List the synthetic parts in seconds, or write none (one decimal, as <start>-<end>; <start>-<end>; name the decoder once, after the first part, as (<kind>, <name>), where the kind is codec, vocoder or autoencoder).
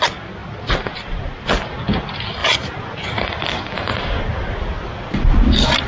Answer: 2.4-5.9 (vocoder, BigVGAN v2)